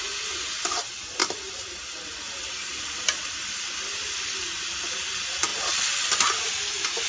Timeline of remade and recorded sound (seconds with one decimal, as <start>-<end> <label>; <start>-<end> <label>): 0.0-1.2 recorded; 1.2-5.0 remade; 5.0-7.1 recorded